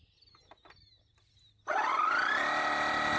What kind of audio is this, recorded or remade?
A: recorded